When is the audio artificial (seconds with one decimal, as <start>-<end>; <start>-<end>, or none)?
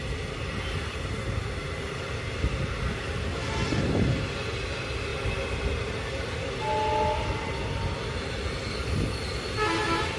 none